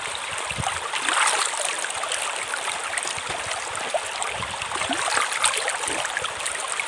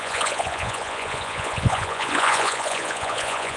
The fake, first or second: second